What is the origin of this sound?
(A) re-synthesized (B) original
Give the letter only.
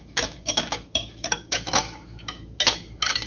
A